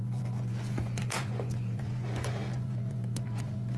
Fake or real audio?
fake